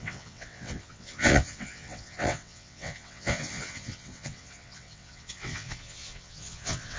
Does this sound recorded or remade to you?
remade